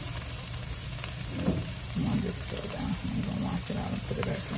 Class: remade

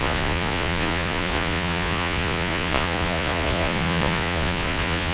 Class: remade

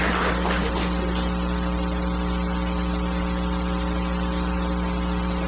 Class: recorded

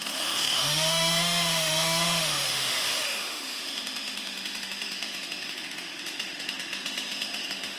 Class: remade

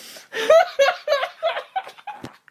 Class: recorded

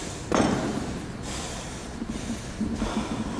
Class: recorded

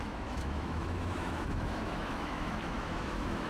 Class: remade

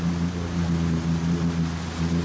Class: recorded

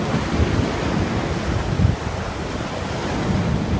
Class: recorded